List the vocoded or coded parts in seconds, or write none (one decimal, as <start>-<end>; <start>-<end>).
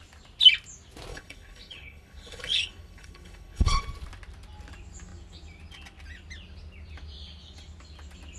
1.1-3.8